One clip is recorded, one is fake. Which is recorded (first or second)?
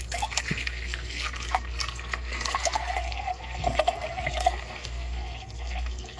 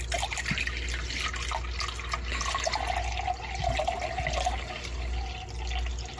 second